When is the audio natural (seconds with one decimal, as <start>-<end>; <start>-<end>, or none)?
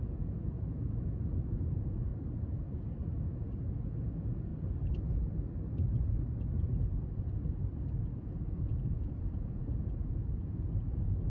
2.1-3.2; 4.5-8.0